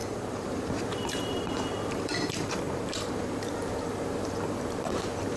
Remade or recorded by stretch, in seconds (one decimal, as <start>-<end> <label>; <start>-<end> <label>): 0.0-5.4 remade